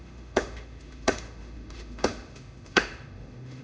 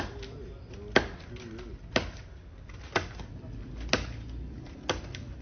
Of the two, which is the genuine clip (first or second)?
second